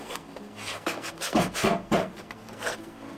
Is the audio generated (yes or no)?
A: yes